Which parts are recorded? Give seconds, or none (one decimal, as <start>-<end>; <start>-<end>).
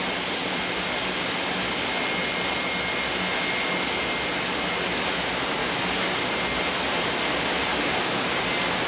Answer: 0.0-5.6; 6.3-7.7; 8.4-8.9